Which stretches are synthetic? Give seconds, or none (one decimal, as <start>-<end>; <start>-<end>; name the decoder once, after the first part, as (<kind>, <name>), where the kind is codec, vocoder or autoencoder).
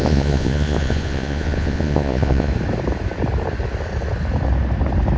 0.0-2.5 (vocoder, Vocos)